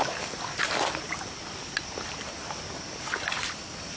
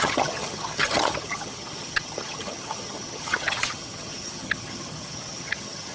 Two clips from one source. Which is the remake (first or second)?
second